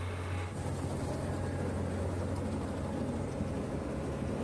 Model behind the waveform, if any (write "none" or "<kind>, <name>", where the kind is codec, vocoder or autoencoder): none